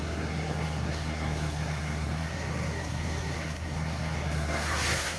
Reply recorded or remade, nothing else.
remade